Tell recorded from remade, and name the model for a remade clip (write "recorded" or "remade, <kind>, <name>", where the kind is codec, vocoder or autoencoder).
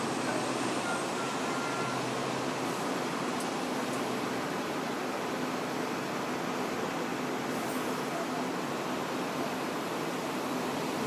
recorded